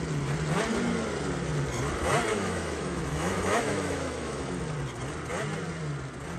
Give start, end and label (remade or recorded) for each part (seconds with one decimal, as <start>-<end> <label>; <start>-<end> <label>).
0.0-2.3 recorded; 2.3-4.4 remade; 4.4-6.4 recorded